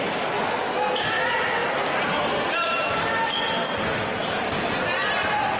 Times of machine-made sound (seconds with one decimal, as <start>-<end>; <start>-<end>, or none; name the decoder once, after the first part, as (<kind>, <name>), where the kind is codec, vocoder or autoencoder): none